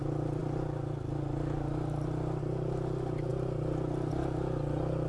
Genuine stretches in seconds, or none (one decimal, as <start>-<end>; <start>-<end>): 0.0-5.1